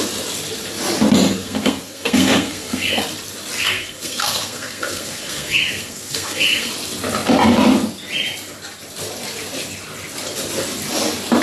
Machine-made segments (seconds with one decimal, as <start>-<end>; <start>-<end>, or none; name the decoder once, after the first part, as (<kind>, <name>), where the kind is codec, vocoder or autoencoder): 1.3-3.0 (codec, SNAC); 3.6-6.7